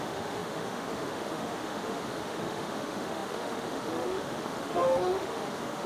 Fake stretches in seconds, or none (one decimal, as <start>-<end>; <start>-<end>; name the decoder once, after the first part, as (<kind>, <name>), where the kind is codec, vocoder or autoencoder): 0.0-5.9 (autoencoder, DAC-VAE)